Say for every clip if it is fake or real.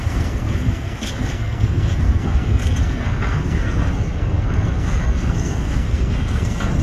fake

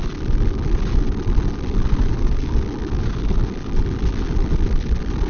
real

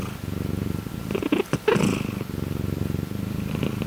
real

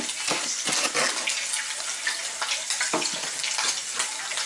real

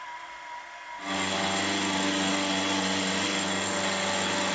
real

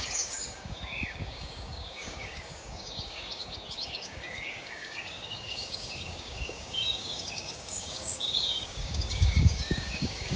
fake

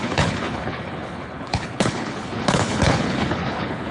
fake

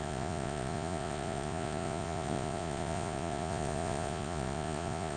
fake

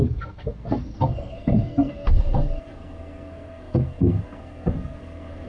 fake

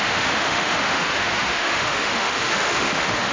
fake